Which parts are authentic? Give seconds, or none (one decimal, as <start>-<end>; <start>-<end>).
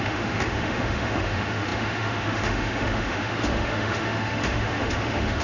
none